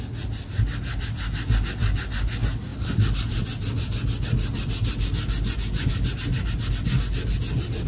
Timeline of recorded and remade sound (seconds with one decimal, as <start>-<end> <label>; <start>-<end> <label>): 0.0-7.9 recorded